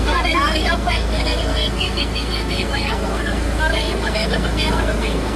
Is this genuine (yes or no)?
no